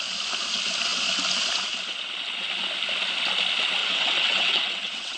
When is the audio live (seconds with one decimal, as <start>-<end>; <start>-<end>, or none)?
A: 0.0-3.8